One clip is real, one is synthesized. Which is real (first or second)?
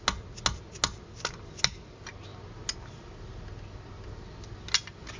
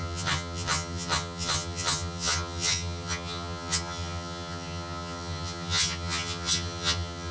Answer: first